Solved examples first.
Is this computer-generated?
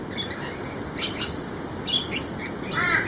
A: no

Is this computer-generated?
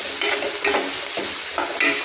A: no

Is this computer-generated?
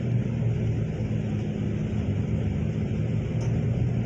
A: no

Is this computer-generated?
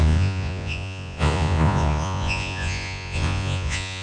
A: yes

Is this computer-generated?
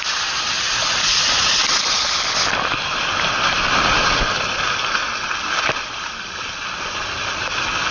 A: no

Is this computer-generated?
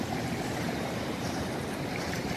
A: yes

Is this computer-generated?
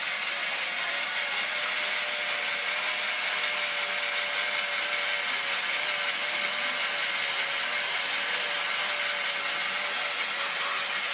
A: no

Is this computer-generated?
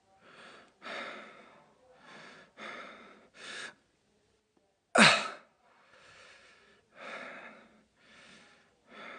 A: no